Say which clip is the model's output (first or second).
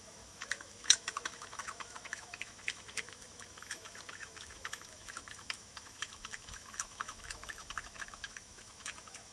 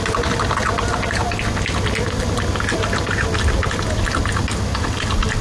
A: first